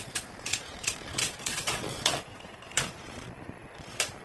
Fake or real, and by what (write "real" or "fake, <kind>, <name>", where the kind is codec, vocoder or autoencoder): fake, vocoder, Vocos